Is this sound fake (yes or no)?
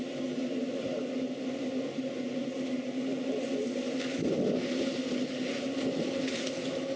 no